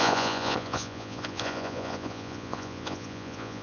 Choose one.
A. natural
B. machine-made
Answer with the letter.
B